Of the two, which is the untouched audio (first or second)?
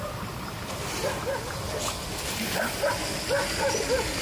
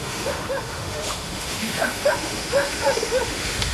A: first